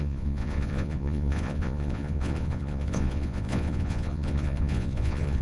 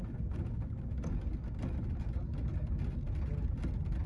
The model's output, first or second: first